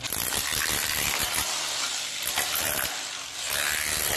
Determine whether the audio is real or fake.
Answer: real